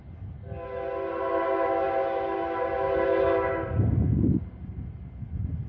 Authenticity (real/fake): real